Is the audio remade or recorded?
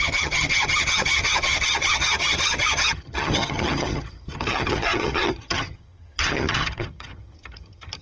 remade